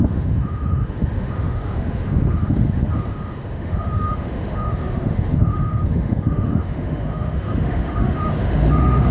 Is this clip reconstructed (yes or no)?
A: yes